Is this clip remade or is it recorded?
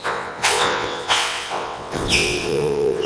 remade